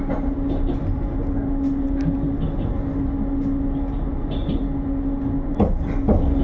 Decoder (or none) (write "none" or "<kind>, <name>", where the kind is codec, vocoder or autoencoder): none